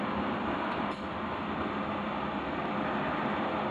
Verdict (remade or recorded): recorded